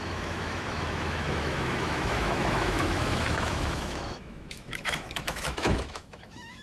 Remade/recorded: remade